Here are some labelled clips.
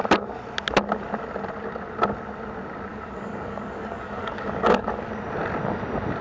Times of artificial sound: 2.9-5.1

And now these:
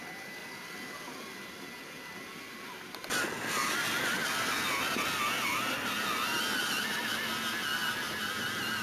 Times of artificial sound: none

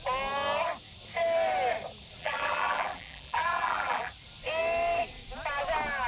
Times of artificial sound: 2.2-4.1

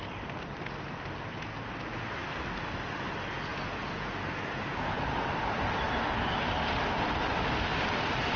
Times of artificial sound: 3.5-5.2

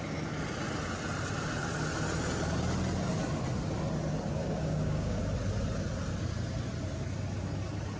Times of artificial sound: 4.4-5.2

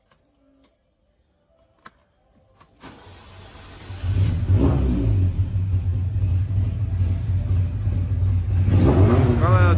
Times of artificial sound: none

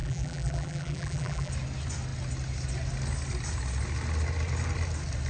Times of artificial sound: 0.0-1.5